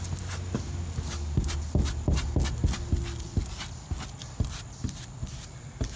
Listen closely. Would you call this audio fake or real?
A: real